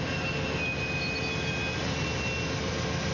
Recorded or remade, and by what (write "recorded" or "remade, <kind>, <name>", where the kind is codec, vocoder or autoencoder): recorded